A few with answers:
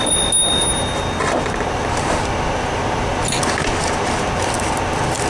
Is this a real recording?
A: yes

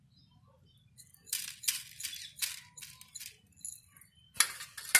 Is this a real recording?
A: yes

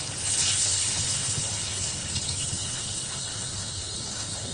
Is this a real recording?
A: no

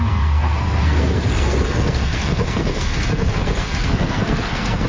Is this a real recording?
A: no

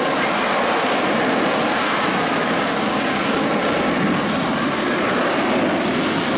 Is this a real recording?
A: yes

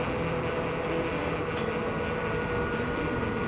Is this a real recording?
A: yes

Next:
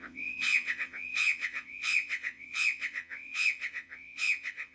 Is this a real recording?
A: no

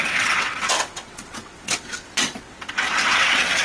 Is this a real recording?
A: no